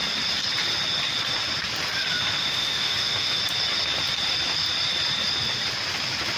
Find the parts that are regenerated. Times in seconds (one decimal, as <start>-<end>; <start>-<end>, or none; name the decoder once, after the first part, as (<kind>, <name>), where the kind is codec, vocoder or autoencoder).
2.4-3.4 (autoencoder, DAC-VAE)